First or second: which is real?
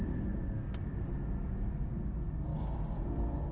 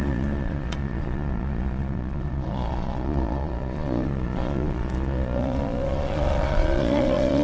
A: first